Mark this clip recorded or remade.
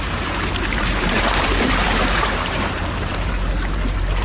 remade